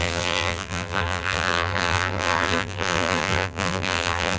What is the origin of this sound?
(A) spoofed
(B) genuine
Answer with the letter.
A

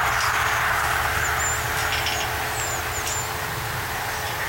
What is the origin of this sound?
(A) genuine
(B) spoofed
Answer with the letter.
A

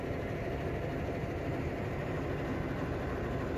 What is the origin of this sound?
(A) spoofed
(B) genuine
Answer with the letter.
B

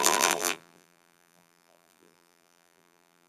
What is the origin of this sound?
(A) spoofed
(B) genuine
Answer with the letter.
A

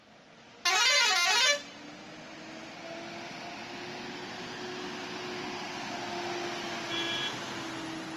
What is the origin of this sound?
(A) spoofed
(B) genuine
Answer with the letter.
B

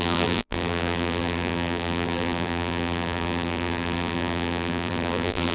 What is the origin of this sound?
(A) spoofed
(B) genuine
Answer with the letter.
A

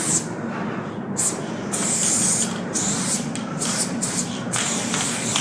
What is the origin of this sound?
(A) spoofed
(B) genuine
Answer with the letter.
A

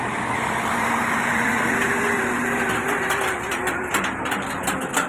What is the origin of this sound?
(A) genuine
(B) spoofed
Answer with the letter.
B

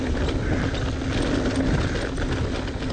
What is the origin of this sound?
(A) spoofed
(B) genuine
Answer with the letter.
B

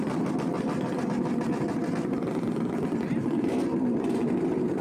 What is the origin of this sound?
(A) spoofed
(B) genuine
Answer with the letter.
A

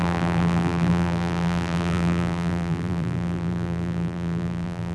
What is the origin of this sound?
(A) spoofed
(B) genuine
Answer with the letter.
A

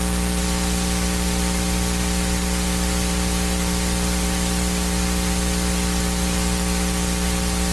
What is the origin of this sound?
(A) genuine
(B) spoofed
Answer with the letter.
B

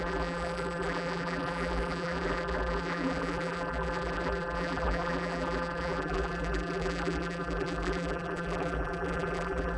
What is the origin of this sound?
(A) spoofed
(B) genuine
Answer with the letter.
A